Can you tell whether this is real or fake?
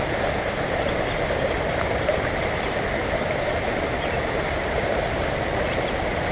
real